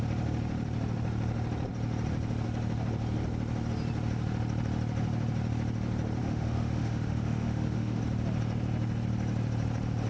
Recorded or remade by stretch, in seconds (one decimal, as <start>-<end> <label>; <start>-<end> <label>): 0.0-6.2 recorded; 6.2-8.0 remade; 8.0-10.1 recorded